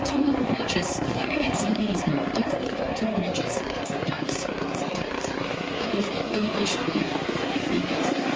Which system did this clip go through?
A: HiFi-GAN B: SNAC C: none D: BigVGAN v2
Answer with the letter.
B